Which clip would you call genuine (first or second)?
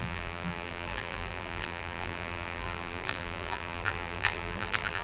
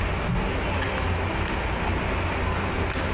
second